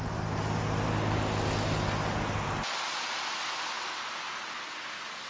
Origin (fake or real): real